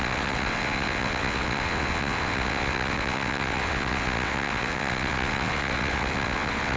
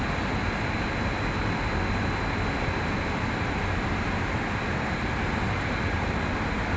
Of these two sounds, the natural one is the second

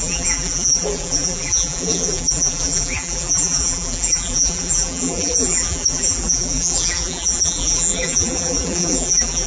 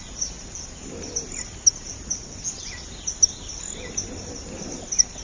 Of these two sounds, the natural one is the second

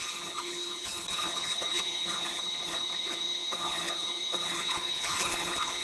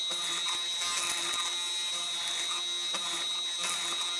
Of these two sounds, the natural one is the second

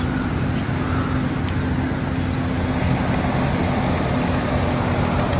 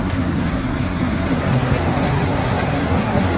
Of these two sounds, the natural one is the first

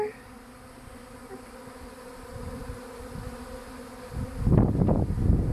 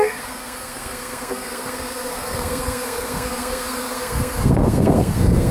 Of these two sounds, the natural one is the first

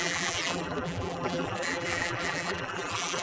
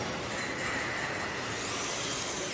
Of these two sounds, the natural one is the second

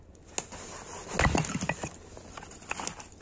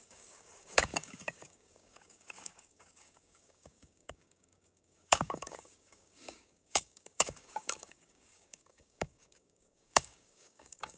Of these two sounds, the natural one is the first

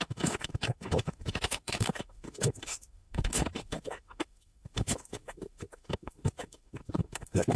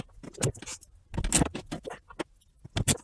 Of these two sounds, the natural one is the second